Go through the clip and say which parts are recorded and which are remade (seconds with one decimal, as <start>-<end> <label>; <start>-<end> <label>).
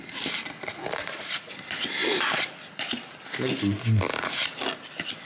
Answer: 0.0-1.0 recorded; 1.0-1.5 remade; 1.5-5.2 recorded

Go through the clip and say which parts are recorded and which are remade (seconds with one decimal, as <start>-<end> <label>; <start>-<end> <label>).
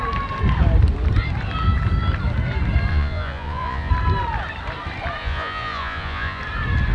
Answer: 0.0-2.9 recorded; 2.9-3.9 remade; 3.9-5.2 recorded; 5.2-6.4 remade; 6.4-6.9 recorded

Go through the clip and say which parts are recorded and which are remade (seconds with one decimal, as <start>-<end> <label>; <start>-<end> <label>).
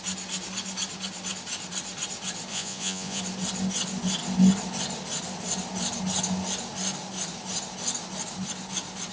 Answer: 0.0-2.5 recorded; 2.5-3.2 remade; 3.2-9.1 recorded